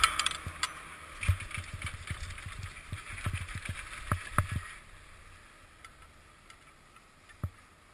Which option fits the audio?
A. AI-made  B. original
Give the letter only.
B